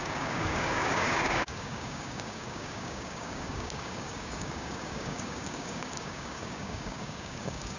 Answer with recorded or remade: remade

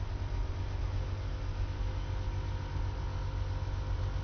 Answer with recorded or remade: recorded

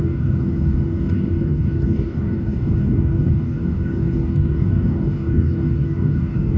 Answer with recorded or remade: remade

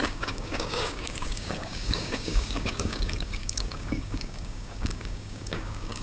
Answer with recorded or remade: remade